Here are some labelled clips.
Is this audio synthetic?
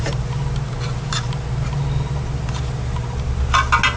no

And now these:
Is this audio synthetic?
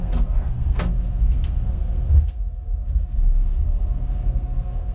yes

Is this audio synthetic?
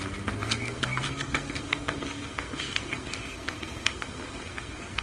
yes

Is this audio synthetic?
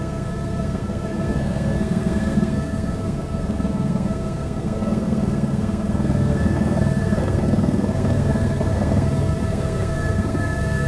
yes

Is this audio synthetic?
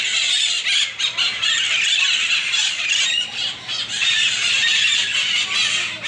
no